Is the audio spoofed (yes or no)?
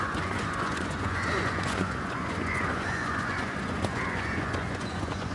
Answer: yes